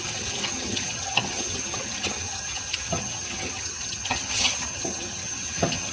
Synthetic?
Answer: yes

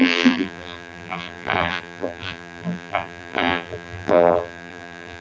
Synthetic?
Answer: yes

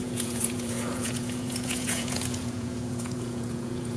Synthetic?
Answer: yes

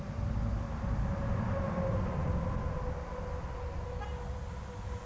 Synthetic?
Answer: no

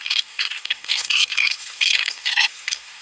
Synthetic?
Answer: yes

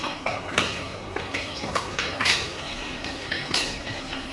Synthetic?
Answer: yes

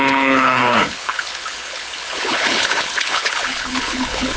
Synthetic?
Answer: yes